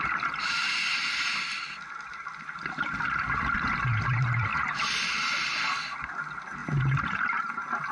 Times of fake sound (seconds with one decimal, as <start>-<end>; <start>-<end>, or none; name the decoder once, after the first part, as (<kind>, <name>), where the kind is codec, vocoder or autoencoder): 4.5-5.7 (vocoder, BigVGAN v2)